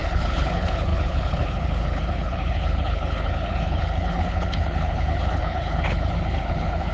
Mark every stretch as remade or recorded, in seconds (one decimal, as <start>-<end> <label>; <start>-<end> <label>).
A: 0.0-6.9 remade